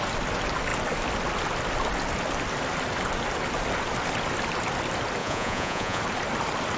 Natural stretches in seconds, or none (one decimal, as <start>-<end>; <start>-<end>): 0.0-5.2; 6.0-6.8